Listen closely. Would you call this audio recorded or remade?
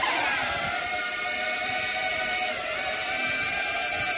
remade